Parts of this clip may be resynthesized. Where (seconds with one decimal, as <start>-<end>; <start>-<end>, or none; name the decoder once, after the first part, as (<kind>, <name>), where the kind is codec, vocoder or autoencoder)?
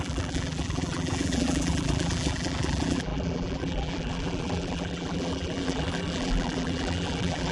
0.0-7.5 (vocoder, BigVGAN v2)